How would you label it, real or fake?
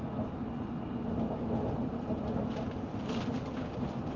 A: real